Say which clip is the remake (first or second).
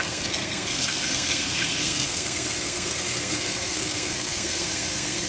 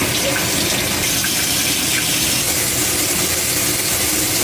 first